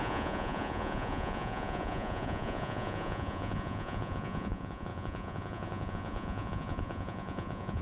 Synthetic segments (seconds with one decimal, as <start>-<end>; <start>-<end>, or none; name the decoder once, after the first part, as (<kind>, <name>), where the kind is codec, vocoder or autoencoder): 0.0-7.8 (vocoder, Vocos)